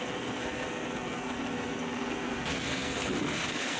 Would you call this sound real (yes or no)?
no